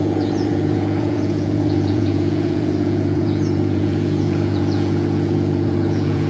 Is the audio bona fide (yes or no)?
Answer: no